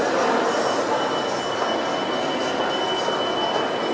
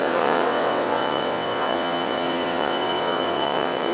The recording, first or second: first